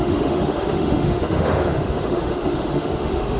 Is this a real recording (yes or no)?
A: no